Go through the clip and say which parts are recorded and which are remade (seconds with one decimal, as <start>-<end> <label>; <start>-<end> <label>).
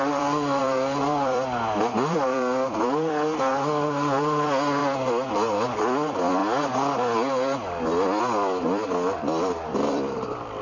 0.0-4.8 remade; 4.8-5.3 recorded; 5.3-6.4 remade; 6.4-8.2 recorded; 8.2-10.6 remade